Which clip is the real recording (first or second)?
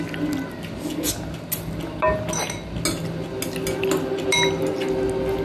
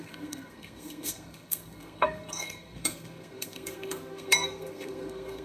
first